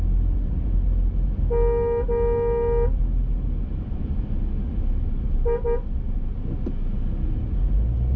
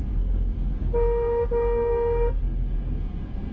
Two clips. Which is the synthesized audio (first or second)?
second